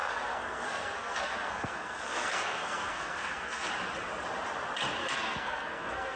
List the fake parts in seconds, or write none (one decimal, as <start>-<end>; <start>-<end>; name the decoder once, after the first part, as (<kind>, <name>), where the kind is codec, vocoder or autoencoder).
0.0-3.7 (codec, SNAC); 5.0-6.2